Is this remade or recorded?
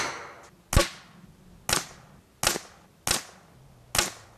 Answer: recorded